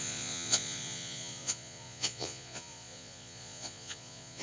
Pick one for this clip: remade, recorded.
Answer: remade